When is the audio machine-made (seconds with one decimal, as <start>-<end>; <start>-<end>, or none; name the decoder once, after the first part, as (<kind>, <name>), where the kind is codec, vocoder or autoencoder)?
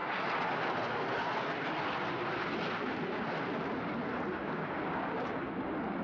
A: 4.4-5.6 (codec, DAC)